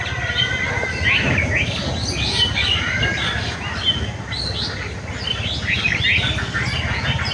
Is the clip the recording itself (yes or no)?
yes